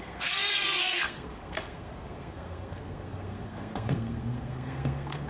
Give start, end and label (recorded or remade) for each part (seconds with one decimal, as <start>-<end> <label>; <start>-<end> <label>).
0.0-5.3 remade